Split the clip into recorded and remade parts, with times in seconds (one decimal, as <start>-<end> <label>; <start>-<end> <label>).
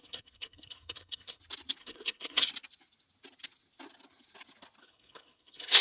0.0-1.4 remade; 1.4-1.8 recorded; 1.8-2.5 remade; 2.5-4.8 recorded; 4.8-5.8 remade